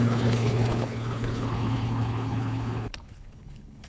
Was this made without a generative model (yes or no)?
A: no